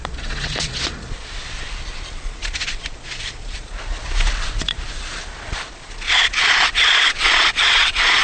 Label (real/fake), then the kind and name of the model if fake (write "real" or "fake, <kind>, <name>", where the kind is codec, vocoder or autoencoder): fake, vocoder, Vocos